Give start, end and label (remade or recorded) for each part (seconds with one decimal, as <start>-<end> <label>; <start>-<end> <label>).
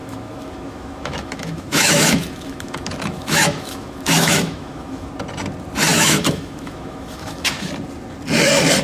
0.0-5.1 remade; 5.1-5.9 recorded; 5.9-7.7 remade; 7.7-8.8 recorded